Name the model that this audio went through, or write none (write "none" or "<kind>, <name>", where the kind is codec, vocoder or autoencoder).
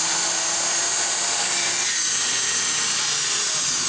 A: none